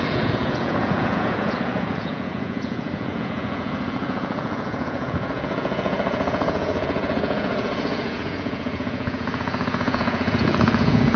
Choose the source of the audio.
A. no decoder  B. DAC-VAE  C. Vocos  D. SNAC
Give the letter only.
C